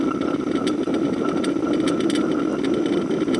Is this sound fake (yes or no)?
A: no